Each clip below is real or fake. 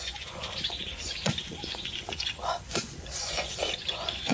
fake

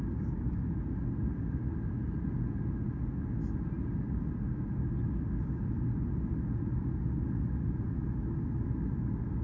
real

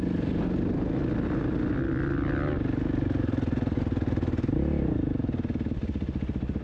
real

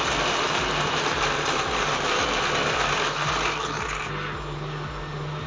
real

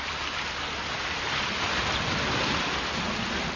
real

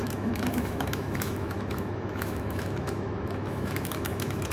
fake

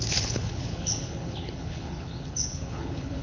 fake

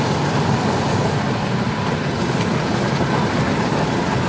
real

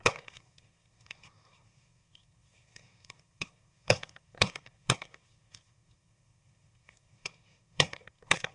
fake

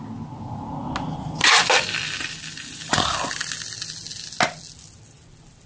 real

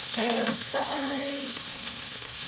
fake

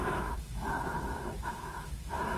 fake